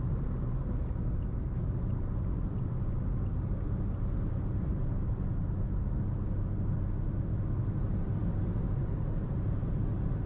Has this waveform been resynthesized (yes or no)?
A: no